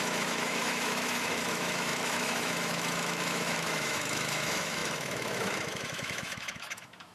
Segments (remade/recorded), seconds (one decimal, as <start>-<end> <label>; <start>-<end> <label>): 0.0-7.1 remade